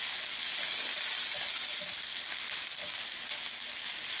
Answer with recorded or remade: recorded